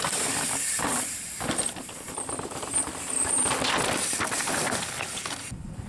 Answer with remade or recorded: remade